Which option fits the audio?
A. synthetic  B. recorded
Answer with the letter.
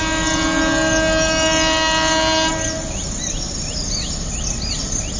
B